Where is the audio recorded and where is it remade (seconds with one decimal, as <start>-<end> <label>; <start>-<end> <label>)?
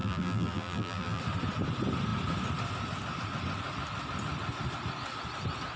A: 0.0-1.2 remade; 1.2-5.8 recorded